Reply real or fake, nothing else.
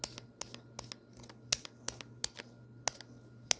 real